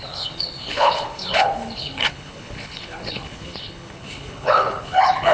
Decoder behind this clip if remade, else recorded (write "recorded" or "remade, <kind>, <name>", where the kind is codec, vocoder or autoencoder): remade, codec, HILCodec